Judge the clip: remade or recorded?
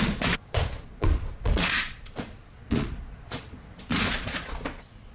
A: remade